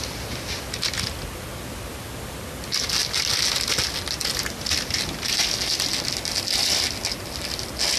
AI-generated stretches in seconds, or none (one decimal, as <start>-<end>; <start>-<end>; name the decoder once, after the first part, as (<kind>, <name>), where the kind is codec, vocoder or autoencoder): none